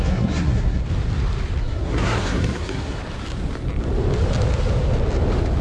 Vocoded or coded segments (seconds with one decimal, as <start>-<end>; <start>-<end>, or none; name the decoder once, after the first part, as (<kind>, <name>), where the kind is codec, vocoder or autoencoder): 0.0-0.8 (codec, SNAC); 1.6-3.0